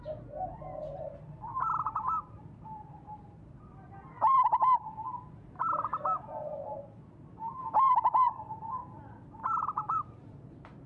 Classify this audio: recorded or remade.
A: remade